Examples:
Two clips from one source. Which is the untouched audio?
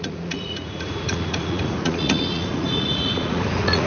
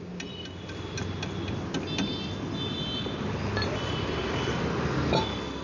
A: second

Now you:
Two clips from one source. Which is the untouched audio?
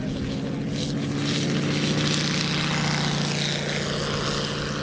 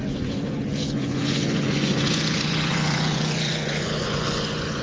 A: first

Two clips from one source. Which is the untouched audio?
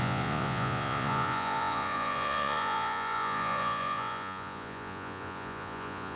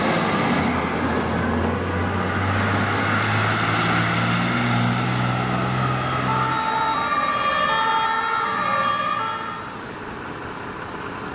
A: second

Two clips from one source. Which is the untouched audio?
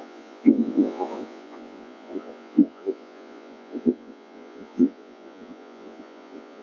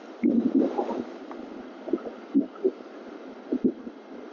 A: second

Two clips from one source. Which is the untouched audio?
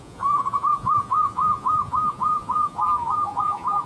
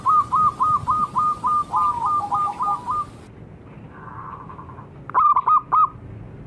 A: second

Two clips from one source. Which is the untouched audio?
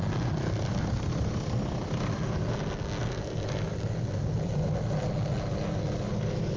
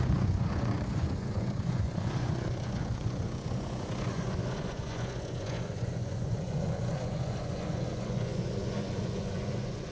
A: first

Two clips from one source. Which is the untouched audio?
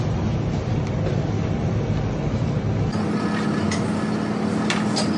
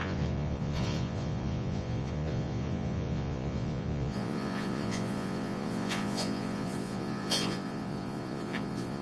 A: first